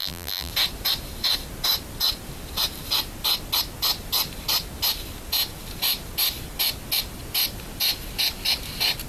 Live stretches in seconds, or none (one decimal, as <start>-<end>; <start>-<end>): 0.5-9.1